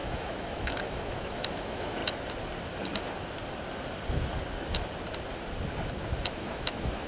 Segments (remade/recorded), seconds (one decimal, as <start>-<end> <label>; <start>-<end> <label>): 0.0-2.0 remade; 2.0-6.3 recorded; 6.3-7.1 remade